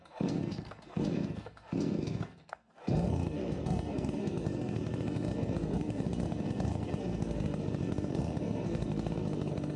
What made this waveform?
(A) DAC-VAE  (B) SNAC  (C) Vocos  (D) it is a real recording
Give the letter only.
B